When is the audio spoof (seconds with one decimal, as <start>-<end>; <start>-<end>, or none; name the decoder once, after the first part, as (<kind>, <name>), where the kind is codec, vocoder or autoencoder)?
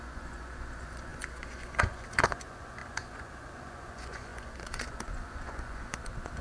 0.0-6.4 (vocoder, Vocos)